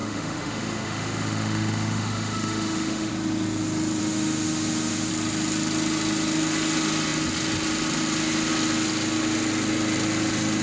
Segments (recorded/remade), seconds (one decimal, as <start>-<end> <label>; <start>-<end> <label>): 0.0-3.1 remade; 3.1-4.0 recorded; 4.0-5.1 remade; 5.1-10.6 recorded